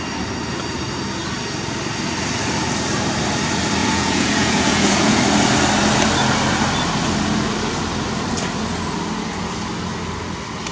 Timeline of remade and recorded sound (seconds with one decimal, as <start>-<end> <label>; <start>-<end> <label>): 0.0-3.8 recorded; 3.8-5.2 remade; 5.2-10.7 recorded